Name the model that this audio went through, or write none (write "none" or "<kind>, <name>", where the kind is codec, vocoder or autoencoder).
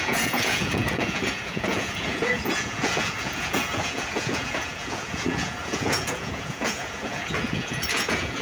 vocoder, Vocos